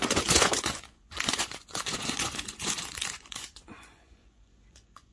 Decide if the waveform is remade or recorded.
remade